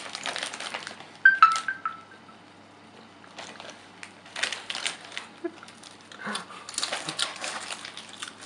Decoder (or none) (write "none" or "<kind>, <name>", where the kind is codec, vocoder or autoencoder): none